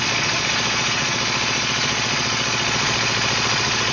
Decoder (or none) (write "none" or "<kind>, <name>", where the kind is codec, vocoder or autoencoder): vocoder, Vocos